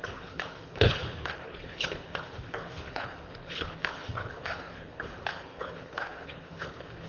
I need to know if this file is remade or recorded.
remade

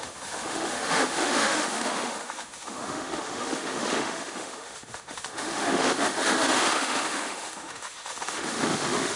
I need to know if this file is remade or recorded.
remade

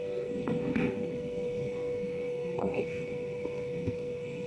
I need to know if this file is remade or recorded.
remade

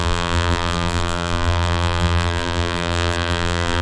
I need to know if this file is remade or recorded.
remade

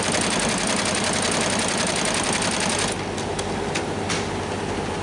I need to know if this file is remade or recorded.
recorded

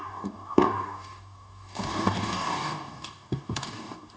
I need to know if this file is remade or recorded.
remade